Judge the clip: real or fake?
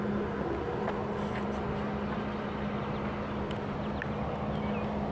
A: real